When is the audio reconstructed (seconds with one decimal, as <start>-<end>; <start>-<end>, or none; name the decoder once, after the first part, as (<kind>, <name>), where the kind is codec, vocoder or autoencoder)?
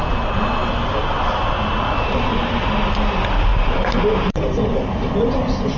3.5-5.1 (vocoder, BigVGAN v2)